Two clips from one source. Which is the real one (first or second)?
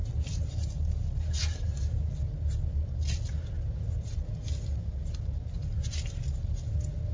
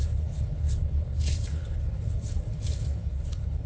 first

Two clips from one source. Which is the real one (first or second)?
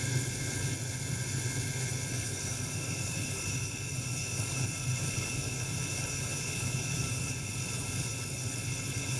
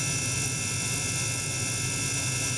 second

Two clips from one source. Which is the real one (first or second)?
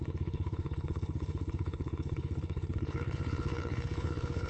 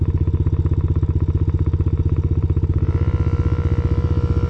second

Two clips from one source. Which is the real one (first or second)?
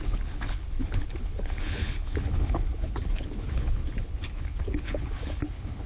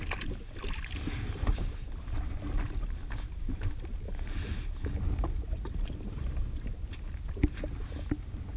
second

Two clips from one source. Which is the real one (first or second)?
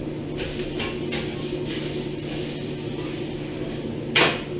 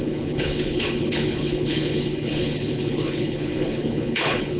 first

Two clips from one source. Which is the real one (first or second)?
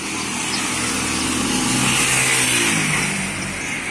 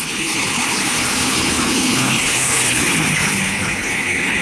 first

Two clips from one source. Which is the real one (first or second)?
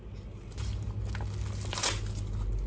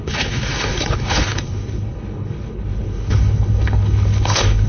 first